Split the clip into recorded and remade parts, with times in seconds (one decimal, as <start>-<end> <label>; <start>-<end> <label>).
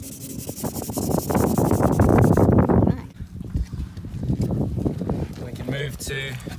0.0-6.6 recorded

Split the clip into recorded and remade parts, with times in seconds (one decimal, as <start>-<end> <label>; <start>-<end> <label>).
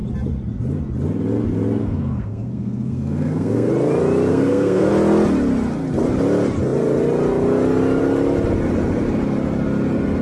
0.0-1.8 recorded; 1.8-3.7 remade; 3.7-4.3 recorded; 4.3-4.9 remade; 4.9-10.2 recorded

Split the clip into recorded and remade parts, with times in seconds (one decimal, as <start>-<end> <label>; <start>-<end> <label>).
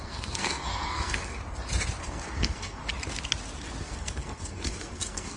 0.0-1.4 remade; 1.4-2.0 recorded; 2.0-2.8 remade; 2.8-3.8 recorded; 3.8-5.4 remade